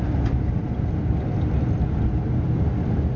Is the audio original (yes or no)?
yes